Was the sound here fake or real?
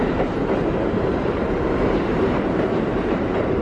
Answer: fake